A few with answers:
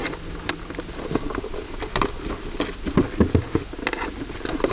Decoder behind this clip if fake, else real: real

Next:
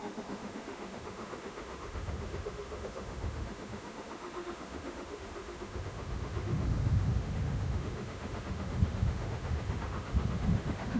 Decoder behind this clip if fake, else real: fake, autoencoder, DAC-VAE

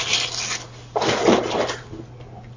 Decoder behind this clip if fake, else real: real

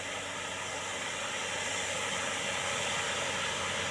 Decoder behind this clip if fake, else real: real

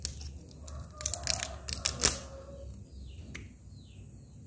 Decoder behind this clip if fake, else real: real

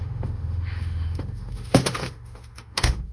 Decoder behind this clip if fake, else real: fake, autoencoder, DAC-VAE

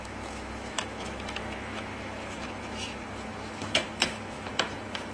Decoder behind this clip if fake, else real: fake, autoencoder, DAC-VAE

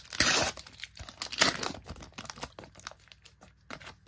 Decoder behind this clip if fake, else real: real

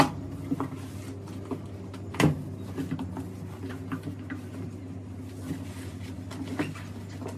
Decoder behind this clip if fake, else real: real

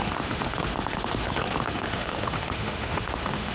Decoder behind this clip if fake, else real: fake, autoencoder, DAC-VAE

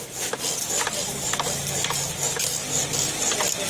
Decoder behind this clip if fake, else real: real